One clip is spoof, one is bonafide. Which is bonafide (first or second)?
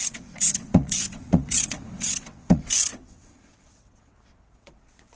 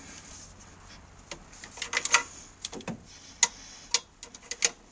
second